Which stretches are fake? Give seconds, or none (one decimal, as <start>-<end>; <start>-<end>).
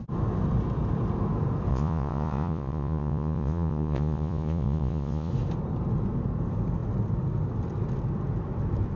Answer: 1.7-5.3